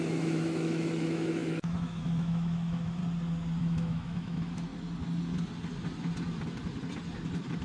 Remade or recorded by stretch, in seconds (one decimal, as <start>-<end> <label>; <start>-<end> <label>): 0.0-3.0 remade; 3.0-3.6 recorded; 3.6-4.7 remade; 4.7-7.6 recorded